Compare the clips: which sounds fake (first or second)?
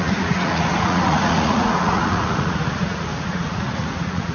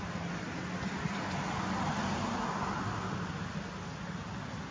first